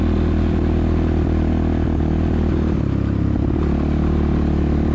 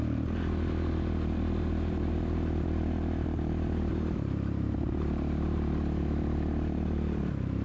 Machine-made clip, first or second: second